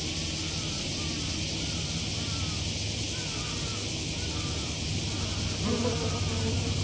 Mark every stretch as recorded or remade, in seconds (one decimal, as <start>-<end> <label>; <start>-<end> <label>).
0.0-6.8 recorded